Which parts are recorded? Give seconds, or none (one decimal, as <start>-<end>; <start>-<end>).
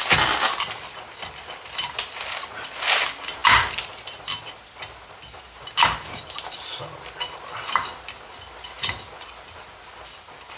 0.0-10.6